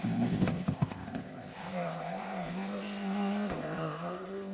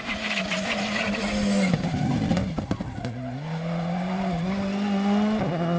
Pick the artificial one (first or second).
first